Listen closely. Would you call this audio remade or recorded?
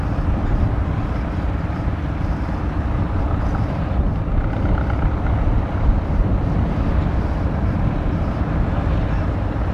recorded